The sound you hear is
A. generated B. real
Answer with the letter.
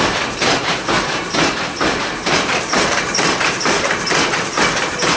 A